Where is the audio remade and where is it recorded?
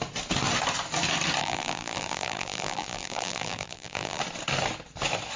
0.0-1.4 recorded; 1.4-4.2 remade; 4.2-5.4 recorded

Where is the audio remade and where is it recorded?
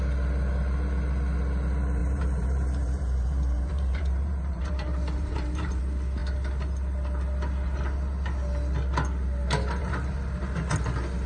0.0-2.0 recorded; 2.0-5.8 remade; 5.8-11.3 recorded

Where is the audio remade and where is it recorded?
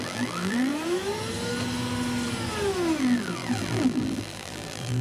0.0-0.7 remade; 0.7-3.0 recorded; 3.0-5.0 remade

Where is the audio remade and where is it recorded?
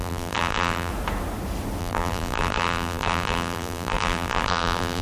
0.0-0.9 remade; 0.9-1.8 recorded; 1.8-5.0 remade